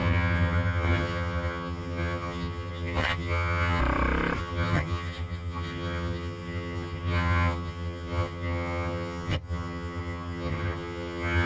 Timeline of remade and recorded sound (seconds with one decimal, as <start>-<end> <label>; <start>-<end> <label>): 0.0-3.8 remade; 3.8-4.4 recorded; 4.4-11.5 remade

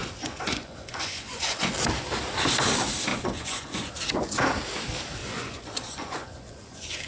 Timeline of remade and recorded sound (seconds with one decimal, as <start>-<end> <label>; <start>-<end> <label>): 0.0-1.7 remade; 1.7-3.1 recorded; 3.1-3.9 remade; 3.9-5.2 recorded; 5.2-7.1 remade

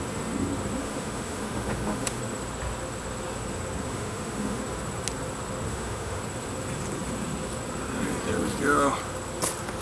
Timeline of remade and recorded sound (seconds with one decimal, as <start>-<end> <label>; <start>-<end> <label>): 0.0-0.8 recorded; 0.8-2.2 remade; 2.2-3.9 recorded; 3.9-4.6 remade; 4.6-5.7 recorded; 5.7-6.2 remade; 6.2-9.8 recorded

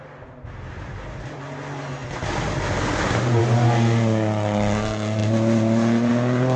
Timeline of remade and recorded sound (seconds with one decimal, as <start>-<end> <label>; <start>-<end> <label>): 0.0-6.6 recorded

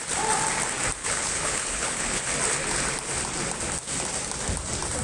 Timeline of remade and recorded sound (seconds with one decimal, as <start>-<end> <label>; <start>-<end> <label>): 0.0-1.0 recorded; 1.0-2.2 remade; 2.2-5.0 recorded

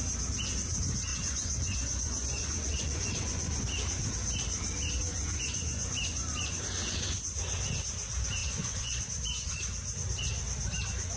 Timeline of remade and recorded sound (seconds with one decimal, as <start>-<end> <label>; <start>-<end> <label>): 0.0-1.1 recorded; 1.1-3.6 remade; 3.6-5.1 recorded; 5.1-6.6 remade; 6.6-8.4 recorded; 8.4-9.0 remade; 9.0-11.2 recorded

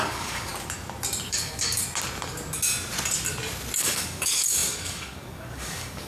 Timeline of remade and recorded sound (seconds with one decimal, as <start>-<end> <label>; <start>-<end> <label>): 0.0-0.5 remade; 0.5-1.3 recorded; 1.3-1.8 remade; 1.8-3.8 recorded; 3.8-6.1 remade